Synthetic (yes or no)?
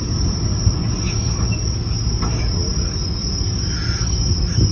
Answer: no